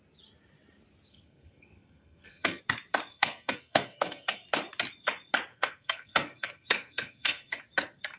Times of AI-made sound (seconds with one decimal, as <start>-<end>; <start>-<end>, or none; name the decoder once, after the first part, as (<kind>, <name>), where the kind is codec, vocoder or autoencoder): 1.1-2.6 (codec, SNAC); 3.1-4.4; 5.5-7.6

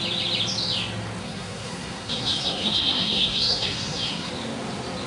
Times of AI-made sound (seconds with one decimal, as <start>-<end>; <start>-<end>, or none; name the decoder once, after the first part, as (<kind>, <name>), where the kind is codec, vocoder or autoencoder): 1.2-4.3 (codec, SNAC)

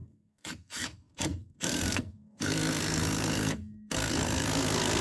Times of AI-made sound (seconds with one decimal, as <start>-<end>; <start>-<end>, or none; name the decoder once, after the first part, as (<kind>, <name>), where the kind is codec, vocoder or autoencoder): 0.0-5.0 (codec, SNAC)

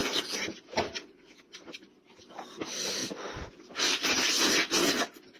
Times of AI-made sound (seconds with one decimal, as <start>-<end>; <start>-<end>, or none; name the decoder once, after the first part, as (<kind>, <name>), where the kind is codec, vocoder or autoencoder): none

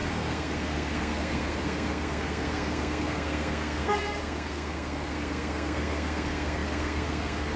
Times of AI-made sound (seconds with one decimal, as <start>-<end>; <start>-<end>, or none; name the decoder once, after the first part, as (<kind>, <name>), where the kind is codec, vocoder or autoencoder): 0.0-7.6 (codec, SNAC)